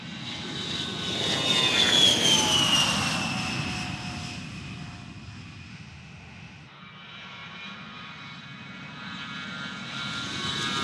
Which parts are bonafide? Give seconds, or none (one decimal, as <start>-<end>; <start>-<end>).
0.0-5.7; 6.8-10.8